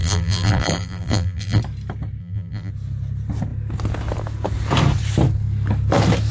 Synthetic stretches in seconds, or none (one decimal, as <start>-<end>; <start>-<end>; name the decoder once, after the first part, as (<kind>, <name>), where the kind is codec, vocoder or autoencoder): 0.0-1.6 (vocoder, BigVGAN v2); 2.2-2.7